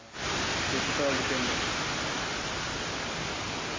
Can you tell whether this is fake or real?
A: real